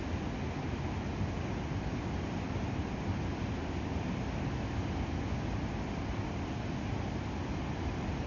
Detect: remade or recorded recorded